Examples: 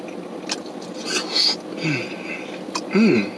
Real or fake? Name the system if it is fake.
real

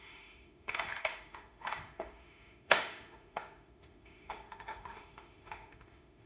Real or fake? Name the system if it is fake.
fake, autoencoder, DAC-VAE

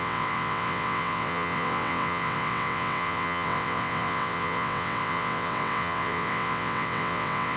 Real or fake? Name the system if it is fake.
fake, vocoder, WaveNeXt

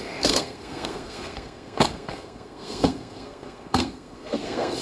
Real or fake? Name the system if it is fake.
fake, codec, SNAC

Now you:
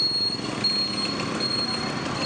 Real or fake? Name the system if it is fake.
real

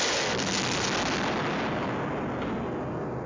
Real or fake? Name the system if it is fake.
real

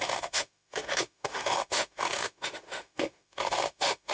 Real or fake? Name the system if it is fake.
fake, autoencoder, DAC-VAE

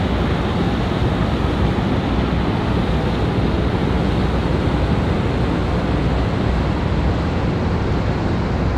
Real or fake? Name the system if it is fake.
real